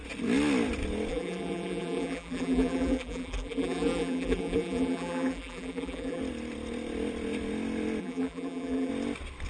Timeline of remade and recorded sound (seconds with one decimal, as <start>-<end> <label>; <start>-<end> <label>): 0.0-1.1 recorded; 1.1-6.2 remade; 6.2-8.0 recorded; 8.0-8.9 remade; 8.9-9.5 recorded